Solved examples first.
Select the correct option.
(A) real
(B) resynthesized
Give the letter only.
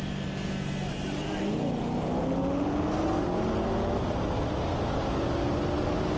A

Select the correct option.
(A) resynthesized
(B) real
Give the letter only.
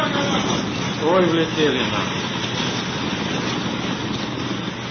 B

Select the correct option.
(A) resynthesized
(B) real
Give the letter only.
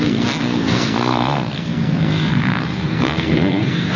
A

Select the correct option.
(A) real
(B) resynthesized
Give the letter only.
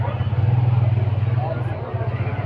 A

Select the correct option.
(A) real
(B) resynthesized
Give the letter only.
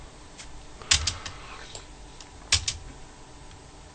A